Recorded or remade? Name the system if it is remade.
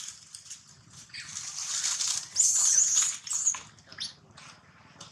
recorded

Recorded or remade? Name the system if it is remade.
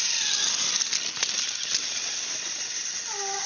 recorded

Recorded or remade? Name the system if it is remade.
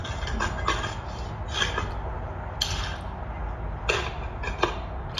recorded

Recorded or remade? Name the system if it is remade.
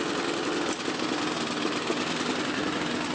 recorded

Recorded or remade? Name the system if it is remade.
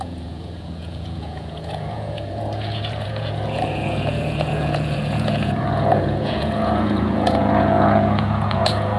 remade, vocoder, Vocos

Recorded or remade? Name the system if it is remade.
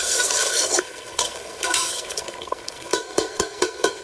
remade, codec, SNAC